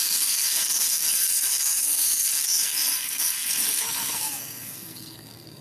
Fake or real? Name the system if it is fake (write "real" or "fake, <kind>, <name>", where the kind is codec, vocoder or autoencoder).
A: fake, codec, SNAC